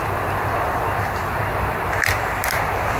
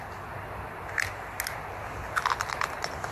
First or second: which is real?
second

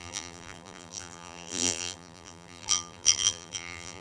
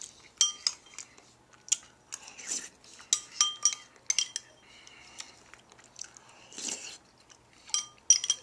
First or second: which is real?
second